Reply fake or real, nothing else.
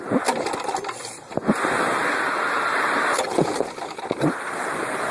real